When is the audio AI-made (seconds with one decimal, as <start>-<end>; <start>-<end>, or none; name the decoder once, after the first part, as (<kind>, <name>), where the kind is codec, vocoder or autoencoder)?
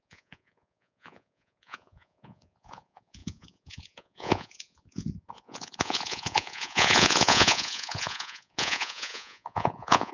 0.0-10.1 (vocoder, Vocos)